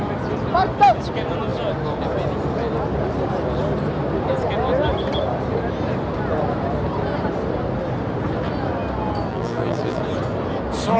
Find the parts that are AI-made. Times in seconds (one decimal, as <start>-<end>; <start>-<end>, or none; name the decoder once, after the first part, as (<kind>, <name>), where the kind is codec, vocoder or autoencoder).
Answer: 9.3-10.0 (vocoder, BigVGAN v2)